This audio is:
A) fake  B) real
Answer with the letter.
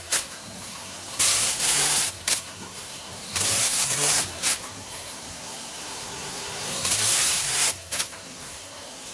A